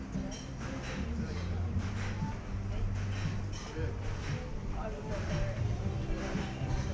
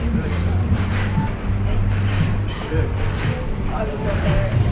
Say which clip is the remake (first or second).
second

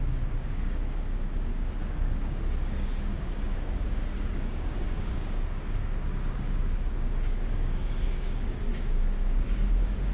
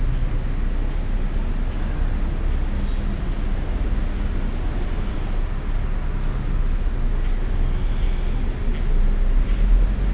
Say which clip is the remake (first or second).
first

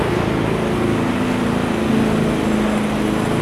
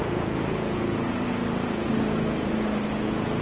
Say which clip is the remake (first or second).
second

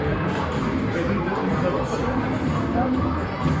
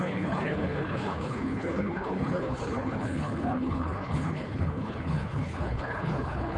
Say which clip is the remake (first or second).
second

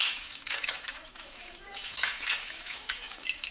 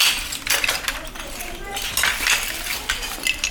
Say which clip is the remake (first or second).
first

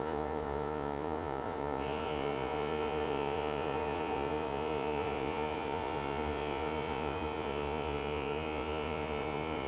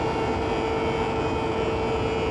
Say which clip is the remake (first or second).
first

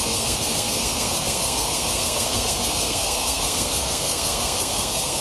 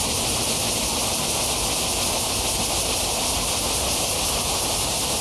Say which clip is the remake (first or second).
first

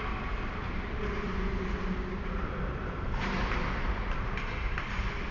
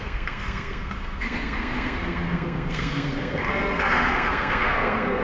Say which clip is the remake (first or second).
second